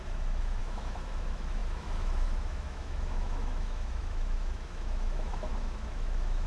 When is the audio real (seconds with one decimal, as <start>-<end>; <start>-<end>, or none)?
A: none